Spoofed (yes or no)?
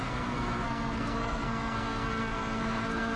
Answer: yes